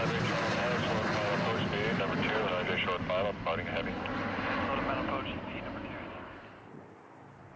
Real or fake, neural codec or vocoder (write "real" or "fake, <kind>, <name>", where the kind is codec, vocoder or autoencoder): real